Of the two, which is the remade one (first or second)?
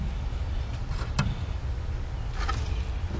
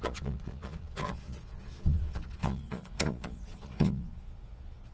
second